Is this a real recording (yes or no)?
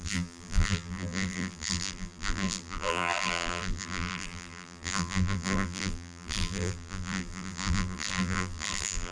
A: no